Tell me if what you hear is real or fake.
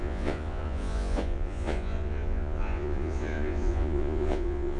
fake